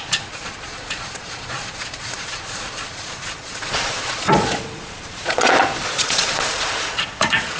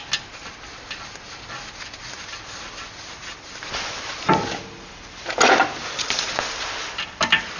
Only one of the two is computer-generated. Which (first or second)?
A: first